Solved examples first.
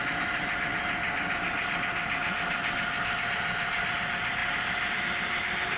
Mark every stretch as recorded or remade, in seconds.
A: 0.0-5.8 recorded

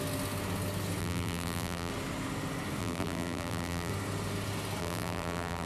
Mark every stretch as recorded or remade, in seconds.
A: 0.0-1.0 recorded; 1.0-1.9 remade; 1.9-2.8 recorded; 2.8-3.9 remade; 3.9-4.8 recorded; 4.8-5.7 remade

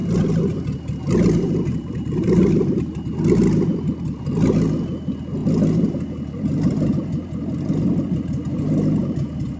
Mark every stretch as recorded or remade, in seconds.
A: 0.0-1.8 recorded; 1.8-2.9 remade; 2.9-9.6 recorded